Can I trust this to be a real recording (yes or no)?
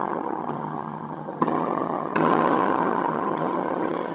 no